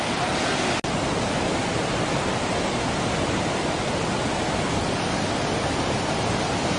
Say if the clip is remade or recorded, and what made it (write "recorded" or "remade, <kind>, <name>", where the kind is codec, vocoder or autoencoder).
recorded